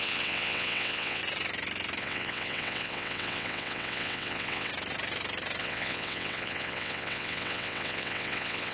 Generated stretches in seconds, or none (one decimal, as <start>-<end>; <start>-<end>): 0.0-1.2; 2.0-4.7; 5.6-8.7